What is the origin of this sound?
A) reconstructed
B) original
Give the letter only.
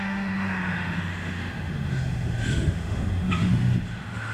A